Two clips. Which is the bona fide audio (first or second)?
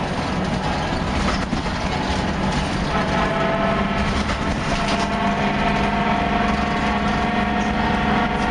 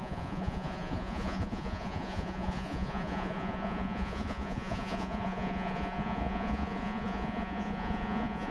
first